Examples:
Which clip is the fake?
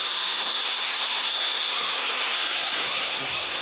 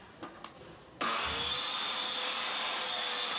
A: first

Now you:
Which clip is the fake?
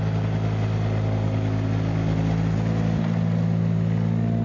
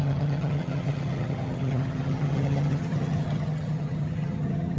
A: second